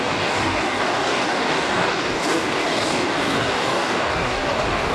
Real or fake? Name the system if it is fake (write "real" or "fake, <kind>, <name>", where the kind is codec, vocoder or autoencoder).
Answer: fake, codec, DAC